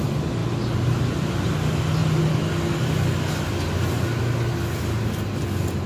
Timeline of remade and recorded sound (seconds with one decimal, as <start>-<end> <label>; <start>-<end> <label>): 0.0-5.9 recorded